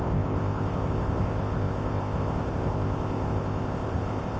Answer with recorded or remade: remade